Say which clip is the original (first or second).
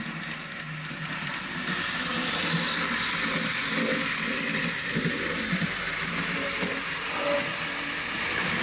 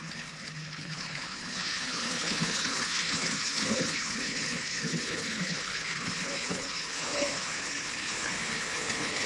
first